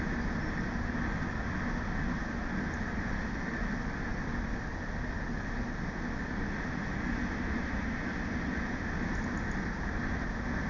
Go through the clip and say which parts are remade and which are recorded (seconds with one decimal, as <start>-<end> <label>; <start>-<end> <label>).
0.0-10.7 recorded